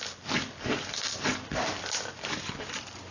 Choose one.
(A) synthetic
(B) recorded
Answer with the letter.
A